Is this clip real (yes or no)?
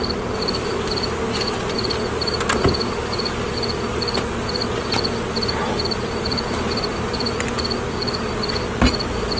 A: yes